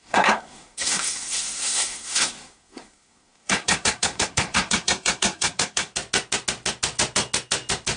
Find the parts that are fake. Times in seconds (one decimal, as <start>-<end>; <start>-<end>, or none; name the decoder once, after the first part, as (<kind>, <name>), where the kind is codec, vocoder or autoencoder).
0.0-5.9 (codec, SNAC)